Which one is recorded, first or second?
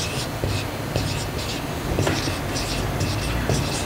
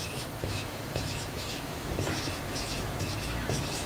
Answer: first